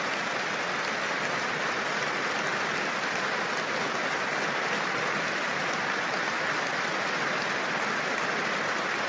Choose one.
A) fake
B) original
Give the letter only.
B